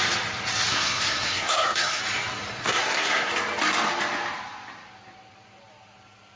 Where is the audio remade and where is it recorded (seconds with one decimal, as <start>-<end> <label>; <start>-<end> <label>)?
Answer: 0.0-0.7 recorded; 0.7-2.0 remade; 2.0-2.6 recorded; 2.6-3.3 remade; 3.3-6.4 recorded